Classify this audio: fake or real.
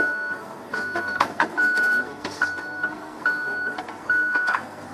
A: fake